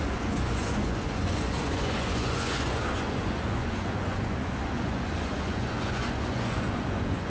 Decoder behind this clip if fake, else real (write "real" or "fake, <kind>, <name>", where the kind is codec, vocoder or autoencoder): fake, vocoder, Vocos